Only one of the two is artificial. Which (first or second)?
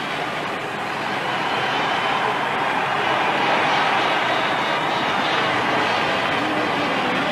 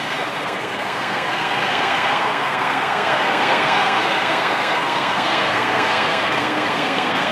second